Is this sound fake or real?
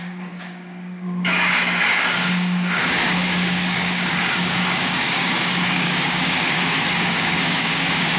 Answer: fake